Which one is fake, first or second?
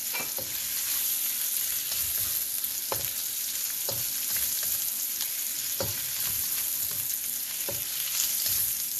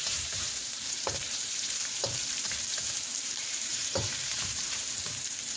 second